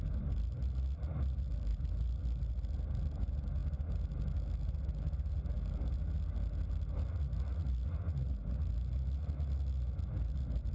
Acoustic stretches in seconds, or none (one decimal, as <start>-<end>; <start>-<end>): 0.0-10.7